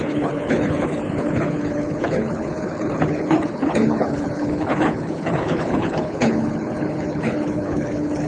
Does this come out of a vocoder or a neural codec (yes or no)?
yes